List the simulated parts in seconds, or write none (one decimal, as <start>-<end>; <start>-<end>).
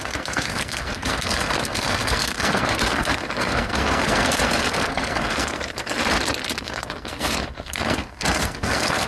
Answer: 0.0-6.0; 6.6-9.1